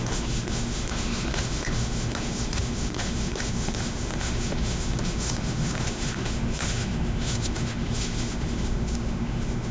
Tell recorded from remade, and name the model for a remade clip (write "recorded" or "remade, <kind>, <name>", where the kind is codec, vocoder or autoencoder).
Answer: remade, autoencoder, DAC-VAE